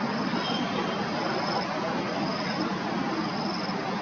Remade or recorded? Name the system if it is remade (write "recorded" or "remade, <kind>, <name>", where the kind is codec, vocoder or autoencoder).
recorded